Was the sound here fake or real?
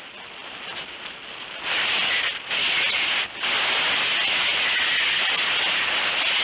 real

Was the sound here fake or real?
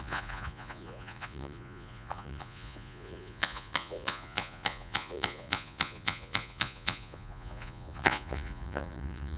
fake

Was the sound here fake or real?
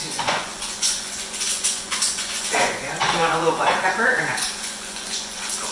fake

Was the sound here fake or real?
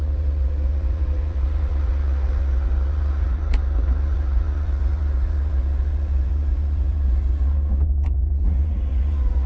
fake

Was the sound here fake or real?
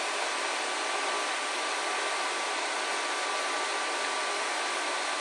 real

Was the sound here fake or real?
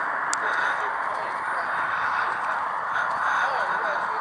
real